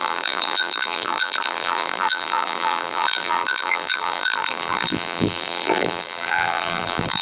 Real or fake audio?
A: fake